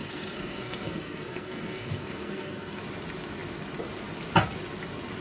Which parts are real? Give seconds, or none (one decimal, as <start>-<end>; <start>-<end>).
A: 2.8-5.2